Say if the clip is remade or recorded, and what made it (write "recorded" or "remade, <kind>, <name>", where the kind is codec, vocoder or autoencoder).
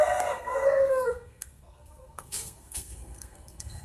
remade, codec, SNAC